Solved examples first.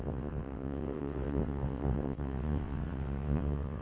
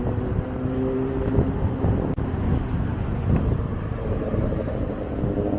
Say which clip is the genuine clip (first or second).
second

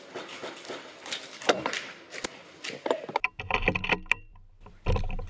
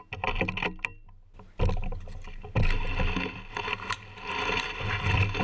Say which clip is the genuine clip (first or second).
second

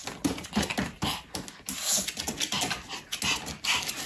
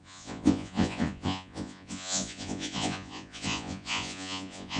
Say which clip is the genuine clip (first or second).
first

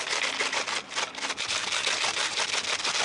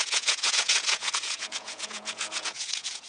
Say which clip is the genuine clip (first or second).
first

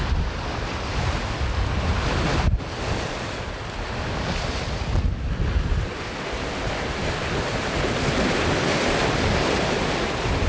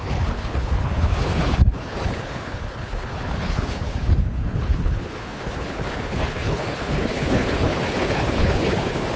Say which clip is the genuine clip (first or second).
first